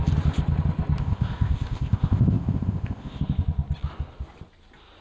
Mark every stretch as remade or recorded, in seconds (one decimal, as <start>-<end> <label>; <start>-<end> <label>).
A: 0.0-1.0 recorded; 1.0-3.2 remade; 3.2-5.0 recorded